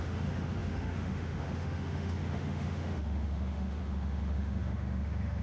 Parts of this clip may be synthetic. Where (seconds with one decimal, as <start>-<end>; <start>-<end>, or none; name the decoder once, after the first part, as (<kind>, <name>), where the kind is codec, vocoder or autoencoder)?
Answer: 0.0-5.4 (autoencoder, DAC-VAE)